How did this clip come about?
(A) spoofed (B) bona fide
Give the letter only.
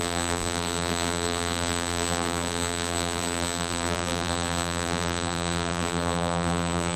A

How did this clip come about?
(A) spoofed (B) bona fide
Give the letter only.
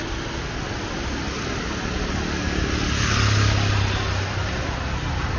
B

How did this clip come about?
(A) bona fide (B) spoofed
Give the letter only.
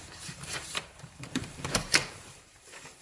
B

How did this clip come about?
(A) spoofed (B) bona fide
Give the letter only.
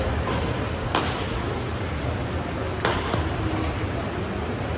B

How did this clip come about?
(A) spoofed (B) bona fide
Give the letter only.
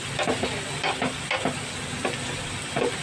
B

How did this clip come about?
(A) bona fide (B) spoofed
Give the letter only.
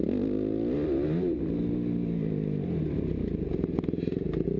A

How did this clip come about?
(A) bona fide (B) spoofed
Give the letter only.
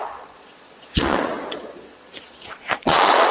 B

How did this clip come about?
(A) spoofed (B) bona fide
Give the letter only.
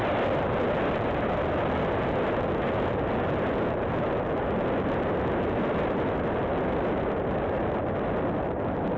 B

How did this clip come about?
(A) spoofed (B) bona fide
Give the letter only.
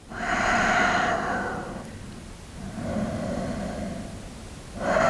B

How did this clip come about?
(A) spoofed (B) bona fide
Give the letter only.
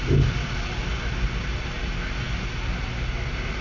B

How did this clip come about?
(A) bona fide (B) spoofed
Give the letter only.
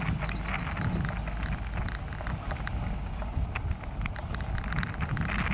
A